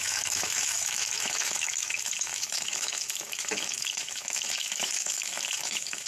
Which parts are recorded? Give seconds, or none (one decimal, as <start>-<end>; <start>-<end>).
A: none